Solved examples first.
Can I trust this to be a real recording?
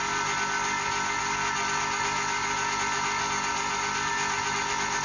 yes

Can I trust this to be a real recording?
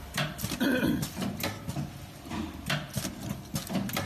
yes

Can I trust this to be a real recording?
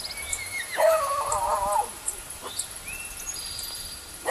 yes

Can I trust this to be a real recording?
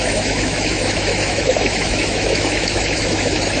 no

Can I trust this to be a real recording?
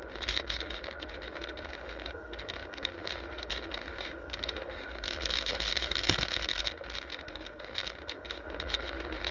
no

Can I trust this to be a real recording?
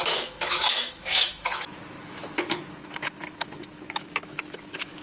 no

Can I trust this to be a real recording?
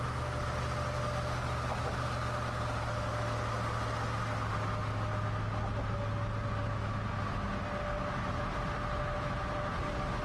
yes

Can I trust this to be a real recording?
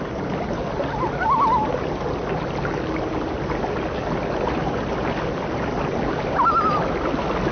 yes